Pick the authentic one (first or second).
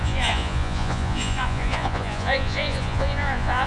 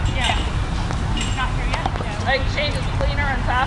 second